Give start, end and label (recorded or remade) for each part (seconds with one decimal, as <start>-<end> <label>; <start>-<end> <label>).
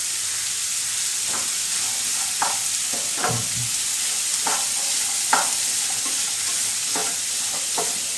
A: 0.0-2.6 recorded; 2.6-4.4 remade; 4.4-7.0 recorded; 7.0-8.2 remade